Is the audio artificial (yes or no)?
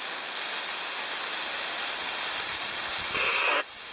no